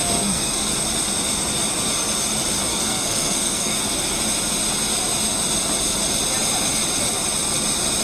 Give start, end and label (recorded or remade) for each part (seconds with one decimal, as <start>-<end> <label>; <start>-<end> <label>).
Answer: 0.0-0.7 remade; 0.7-2.7 recorded; 2.7-3.8 remade; 3.8-8.0 recorded